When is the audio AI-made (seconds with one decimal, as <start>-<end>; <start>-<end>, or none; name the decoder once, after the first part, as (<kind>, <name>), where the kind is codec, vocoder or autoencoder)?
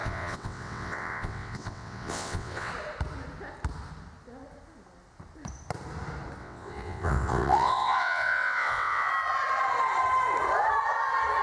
0.0-2.7 (vocoder, WaveNeXt); 6.4-9.1